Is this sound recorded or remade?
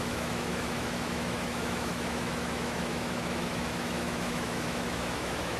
remade